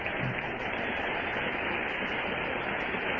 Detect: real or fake real